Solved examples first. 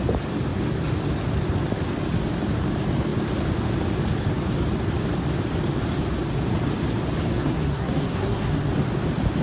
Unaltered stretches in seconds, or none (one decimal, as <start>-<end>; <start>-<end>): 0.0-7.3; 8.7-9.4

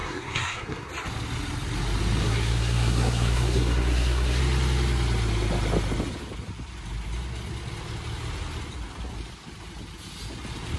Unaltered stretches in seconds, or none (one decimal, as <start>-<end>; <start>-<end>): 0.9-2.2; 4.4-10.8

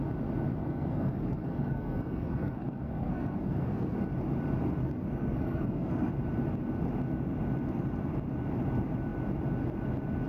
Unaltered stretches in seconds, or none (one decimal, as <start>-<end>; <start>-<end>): 0.0-0.6; 4.0-4.8; 6.1-10.3

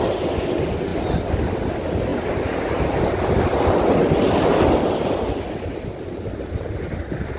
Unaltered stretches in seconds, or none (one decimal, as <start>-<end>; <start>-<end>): 0.0-7.4

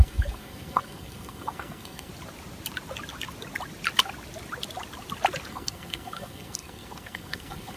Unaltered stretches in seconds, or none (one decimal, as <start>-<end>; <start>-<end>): 2.1-5.5

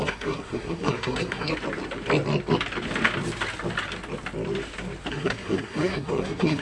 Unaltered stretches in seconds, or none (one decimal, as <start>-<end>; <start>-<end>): 1.5-5.1